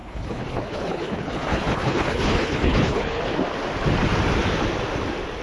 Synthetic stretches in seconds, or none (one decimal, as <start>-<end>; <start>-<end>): 0.0-3.2